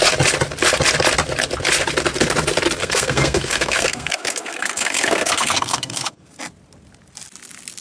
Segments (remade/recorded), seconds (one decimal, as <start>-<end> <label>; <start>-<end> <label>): 0.0-2.8 recorded; 2.8-6.3 remade; 6.3-7.8 recorded